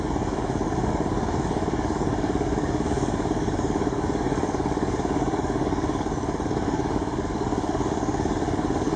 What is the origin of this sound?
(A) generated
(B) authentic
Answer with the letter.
A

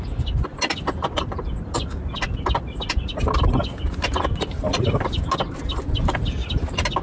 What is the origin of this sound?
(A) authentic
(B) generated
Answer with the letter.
A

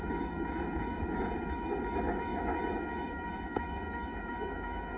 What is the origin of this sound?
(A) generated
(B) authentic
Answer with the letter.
A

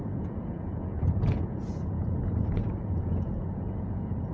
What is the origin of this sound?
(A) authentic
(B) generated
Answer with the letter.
B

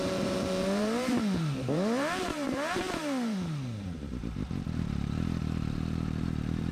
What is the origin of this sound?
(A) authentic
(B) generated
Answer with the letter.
B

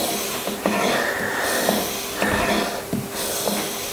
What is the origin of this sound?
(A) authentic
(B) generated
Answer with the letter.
A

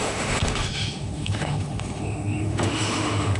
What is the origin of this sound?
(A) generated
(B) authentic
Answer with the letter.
A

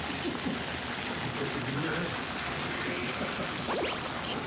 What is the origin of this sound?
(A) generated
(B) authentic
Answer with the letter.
B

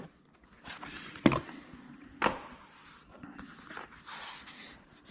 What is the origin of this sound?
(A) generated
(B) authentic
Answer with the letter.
B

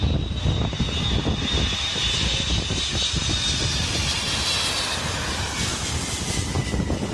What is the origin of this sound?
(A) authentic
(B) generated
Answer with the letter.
A